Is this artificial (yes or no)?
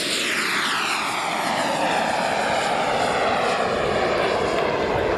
no